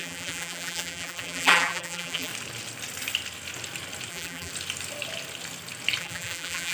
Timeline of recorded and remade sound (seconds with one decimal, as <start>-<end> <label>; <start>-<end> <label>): 0.0-2.3 remade; 2.3-4.1 recorded; 4.1-4.5 remade; 4.5-6.0 recorded; 6.0-6.7 remade